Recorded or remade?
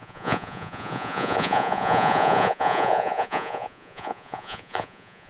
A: remade